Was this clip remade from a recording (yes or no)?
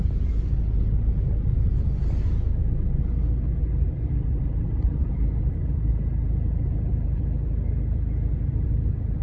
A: no